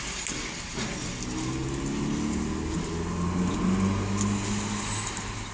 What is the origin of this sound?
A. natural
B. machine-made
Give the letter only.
A